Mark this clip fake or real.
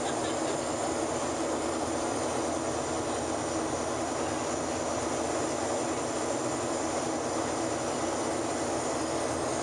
real